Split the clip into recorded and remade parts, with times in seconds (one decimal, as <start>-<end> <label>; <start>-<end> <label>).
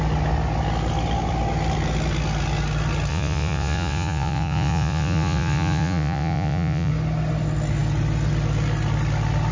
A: 0.0-3.1 recorded; 3.1-6.9 remade; 6.9-9.5 recorded